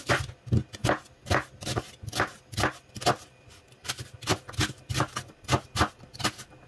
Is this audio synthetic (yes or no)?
no